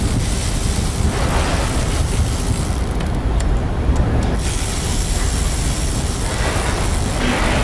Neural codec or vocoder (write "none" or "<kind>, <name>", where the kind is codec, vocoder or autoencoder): none